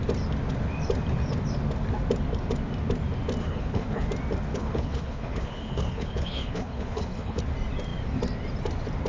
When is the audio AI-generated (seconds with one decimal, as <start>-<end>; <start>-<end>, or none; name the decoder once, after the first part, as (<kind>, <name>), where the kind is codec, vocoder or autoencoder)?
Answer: 3.4-4.1 (codec, HILCodec); 4.5-7.4